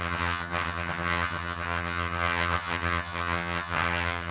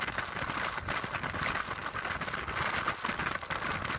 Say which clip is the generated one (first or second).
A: first